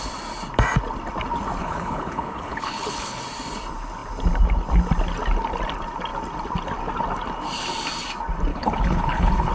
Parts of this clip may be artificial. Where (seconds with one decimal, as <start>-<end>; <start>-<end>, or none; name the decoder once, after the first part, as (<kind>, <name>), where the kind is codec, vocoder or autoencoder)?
1.6-3.2 (codec, HILCodec); 8.5-9.5